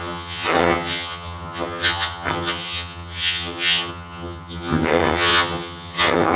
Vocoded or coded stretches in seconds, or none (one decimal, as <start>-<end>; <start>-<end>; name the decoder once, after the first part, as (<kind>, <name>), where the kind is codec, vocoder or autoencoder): 0.0-6.4 (vocoder, HiFi-GAN)